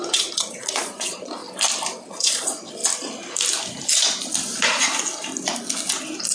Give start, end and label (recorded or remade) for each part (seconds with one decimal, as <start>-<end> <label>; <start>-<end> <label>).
0.0-1.4 remade; 1.4-2.1 recorded; 2.1-2.8 remade; 2.8-6.3 recorded